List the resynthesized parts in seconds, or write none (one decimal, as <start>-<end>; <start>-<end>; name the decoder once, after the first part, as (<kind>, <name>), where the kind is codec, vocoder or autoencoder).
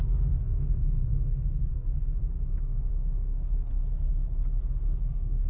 0.0-2.2 (codec, SNAC); 2.9-3.7; 5.0-5.5